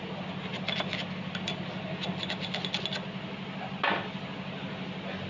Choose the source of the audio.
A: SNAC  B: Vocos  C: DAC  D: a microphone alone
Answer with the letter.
D